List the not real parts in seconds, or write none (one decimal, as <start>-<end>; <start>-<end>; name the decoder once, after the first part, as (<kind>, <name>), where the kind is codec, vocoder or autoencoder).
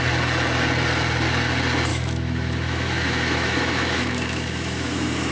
1.9-5.3 (autoencoder, DAC-VAE)